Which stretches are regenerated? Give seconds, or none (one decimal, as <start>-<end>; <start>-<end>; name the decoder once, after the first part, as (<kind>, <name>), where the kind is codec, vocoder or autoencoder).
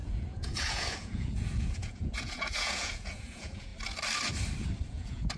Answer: 0.0-3.7 (vocoder, Vocos); 4.9-5.4